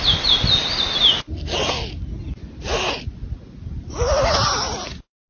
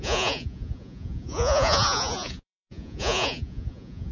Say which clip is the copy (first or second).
second